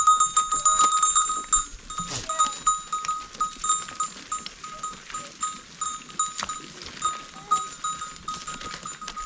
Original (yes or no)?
yes